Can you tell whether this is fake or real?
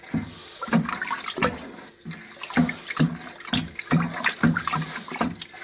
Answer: real